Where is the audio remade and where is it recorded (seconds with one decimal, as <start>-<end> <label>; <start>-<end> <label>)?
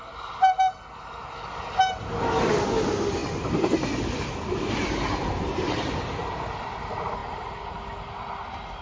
0.0-8.8 recorded